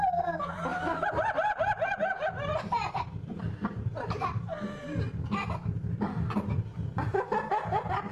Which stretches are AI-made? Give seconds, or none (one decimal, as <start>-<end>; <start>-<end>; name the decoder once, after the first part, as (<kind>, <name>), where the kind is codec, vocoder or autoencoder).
0.0-4.5 (vocoder, BigVGAN v2); 7.1-8.1